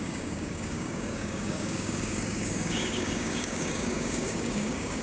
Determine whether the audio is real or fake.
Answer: fake